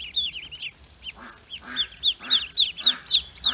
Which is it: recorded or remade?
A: recorded